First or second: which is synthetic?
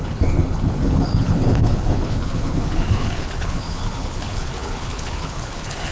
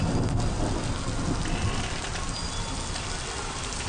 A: first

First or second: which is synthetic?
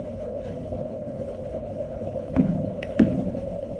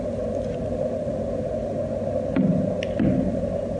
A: first